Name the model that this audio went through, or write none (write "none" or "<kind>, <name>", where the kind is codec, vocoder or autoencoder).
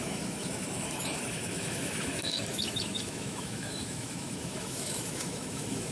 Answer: autoencoder, DAC-VAE